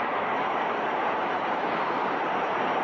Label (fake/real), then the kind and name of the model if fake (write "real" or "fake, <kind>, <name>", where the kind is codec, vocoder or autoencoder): fake, vocoder, BigVGAN v2